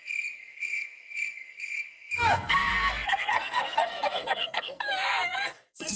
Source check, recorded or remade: remade